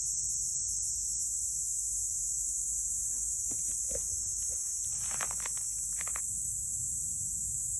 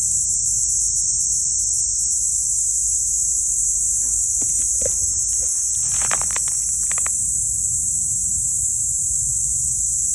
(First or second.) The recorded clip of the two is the first